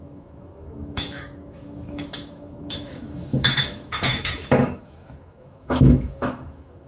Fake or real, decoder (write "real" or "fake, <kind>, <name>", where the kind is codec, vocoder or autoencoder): fake, autoencoder, DAC-VAE